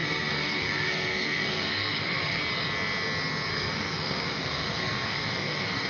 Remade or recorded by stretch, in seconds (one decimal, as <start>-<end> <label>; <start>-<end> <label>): 0.0-2.4 remade; 2.4-3.5 recorded; 3.5-5.9 remade

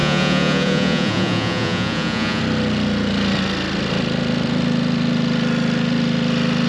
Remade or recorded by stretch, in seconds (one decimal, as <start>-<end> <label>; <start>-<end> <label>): 0.0-2.4 remade; 2.4-6.7 recorded

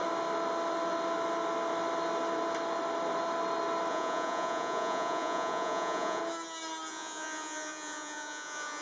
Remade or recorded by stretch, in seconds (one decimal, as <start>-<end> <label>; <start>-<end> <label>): 0.0-3.9 recorded; 3.9-6.2 remade; 6.2-6.9 recorded; 6.9-8.8 remade

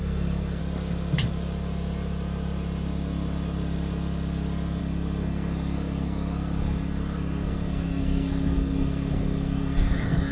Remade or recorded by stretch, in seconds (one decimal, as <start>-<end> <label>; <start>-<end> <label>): 0.0-0.6 remade; 0.6-4.8 recorded; 4.8-10.3 remade